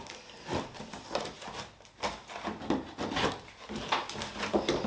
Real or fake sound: real